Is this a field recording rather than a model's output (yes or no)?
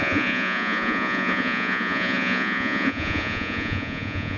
no